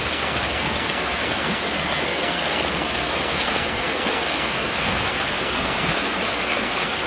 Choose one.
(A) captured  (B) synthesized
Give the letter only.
B